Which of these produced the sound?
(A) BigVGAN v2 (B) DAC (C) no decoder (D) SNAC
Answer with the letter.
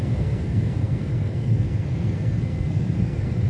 D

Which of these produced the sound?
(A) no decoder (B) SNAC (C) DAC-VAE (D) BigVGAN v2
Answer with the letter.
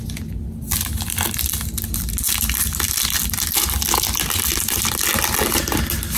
A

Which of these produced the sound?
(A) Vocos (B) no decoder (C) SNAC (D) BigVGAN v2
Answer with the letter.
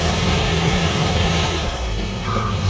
C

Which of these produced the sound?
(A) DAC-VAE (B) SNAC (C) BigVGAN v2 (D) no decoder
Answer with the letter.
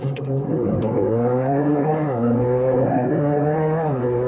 B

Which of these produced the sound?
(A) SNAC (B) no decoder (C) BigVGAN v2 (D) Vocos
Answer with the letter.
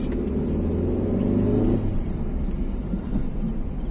B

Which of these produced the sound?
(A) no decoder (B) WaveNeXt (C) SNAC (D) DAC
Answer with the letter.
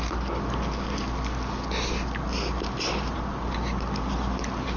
A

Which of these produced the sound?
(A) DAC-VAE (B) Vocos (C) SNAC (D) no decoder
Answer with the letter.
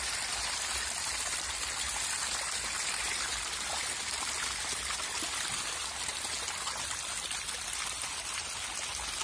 D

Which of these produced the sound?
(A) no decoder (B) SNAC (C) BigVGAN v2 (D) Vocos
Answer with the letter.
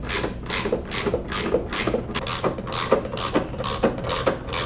A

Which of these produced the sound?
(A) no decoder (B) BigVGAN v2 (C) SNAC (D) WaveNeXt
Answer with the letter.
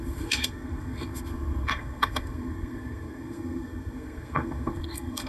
C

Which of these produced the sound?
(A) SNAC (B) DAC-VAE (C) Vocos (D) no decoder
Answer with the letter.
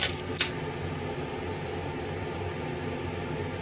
D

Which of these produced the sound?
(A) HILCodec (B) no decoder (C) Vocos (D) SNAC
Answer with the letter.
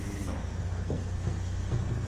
D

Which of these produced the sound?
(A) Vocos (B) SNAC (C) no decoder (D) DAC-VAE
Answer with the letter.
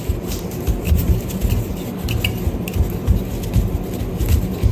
C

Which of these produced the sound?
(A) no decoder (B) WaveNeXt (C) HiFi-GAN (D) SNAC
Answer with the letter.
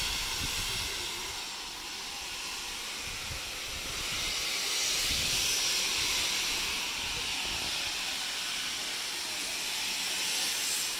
A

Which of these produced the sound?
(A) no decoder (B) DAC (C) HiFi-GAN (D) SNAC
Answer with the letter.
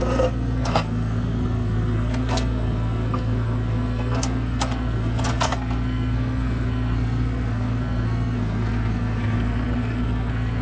D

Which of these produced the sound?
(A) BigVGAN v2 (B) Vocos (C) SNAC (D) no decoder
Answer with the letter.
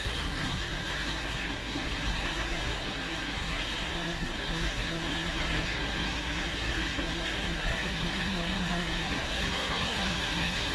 C